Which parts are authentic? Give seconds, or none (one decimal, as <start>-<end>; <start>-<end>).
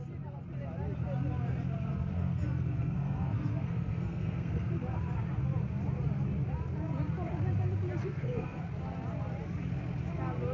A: 0.0-1.9; 4.7-8.0; 8.6-10.5